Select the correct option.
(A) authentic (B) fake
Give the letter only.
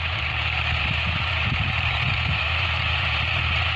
B